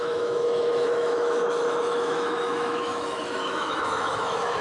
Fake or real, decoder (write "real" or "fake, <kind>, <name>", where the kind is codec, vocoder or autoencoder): fake, autoencoder, DAC-VAE